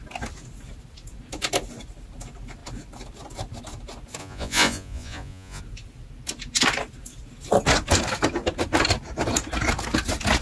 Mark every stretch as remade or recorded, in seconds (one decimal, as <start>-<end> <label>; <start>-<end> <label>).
0.0-4.2 recorded; 4.2-5.6 remade; 5.6-10.4 recorded